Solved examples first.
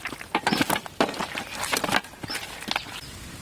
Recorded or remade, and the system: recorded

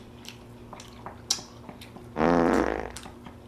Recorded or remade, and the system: recorded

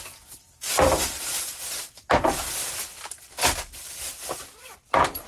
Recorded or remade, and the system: recorded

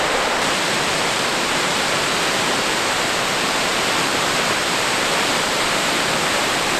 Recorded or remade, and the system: remade, vocoder, BigVGAN v2